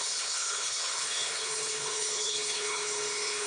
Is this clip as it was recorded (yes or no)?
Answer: no